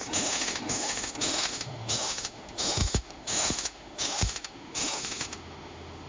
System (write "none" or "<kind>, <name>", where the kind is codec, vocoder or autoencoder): autoencoder, DAC-VAE